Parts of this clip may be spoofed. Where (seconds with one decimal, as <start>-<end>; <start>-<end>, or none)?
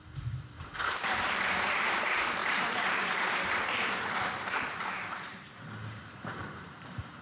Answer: 0.0-7.2